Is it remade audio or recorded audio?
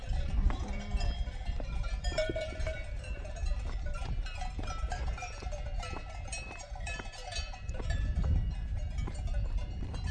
remade